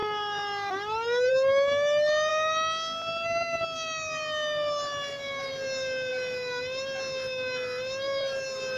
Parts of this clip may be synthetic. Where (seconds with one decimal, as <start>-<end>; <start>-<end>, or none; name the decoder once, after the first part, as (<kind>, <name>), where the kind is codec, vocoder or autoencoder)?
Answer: none